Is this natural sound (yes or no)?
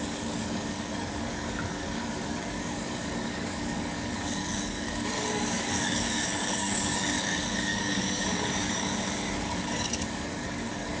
no